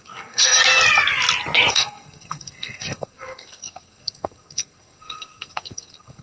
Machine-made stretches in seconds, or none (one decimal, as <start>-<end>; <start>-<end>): 0.0-0.6; 1.7-6.2